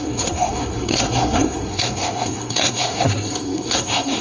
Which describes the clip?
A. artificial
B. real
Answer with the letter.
A